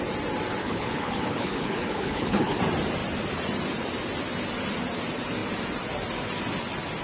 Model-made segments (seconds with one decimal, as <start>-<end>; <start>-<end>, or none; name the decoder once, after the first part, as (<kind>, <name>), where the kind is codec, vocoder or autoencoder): 0.6-2.6 (codec, HILCodec)